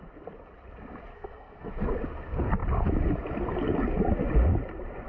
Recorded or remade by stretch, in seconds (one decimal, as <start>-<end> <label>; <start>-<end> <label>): 0.0-1.1 recorded; 1.1-1.7 remade; 1.7-5.1 recorded